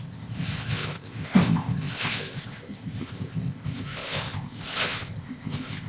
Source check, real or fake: fake